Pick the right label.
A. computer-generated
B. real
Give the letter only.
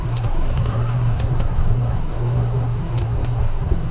A